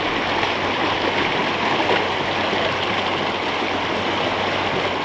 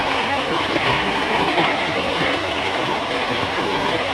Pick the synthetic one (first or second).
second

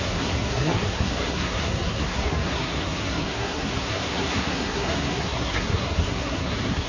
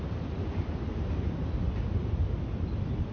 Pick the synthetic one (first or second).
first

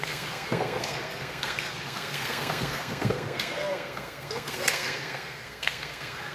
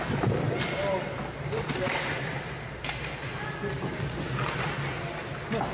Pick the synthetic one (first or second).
first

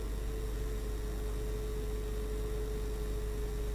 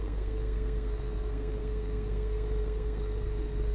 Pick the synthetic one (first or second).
second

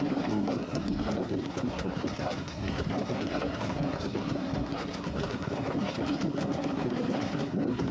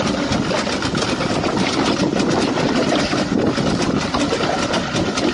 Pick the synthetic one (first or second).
first